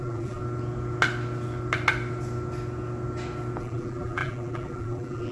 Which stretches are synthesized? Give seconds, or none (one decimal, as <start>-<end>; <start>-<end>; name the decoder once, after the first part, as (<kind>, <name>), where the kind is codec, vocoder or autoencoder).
0.0-0.4 (vocoder, BigVGAN v2); 3.6-5.3